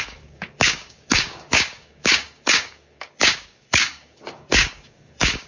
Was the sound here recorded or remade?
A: remade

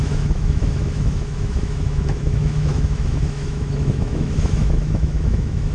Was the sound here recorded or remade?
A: remade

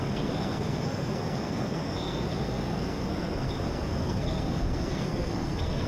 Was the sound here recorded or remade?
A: remade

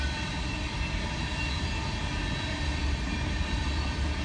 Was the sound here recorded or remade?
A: recorded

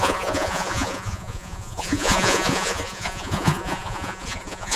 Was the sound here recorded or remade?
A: remade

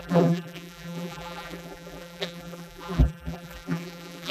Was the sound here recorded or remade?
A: remade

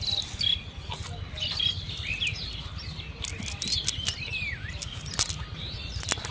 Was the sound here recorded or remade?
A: recorded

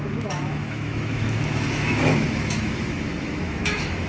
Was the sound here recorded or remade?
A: remade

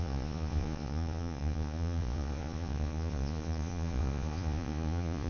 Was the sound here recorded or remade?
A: remade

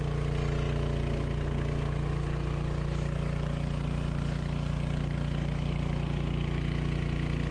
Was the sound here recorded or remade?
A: recorded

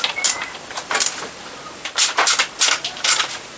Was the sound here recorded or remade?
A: recorded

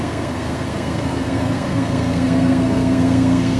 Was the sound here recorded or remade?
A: remade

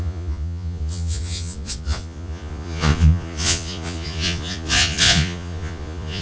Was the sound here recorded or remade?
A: remade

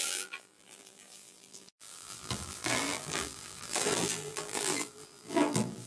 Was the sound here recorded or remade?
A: remade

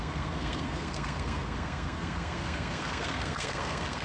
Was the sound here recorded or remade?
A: remade